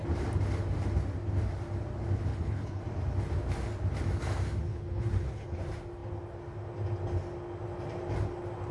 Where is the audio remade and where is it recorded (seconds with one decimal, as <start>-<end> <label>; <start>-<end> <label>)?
0.0-2.3 recorded; 2.3-2.8 remade; 2.8-4.7 recorded; 4.7-5.6 remade; 5.6-8.7 recorded